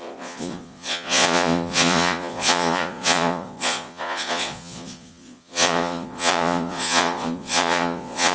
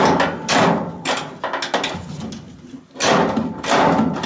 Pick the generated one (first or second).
first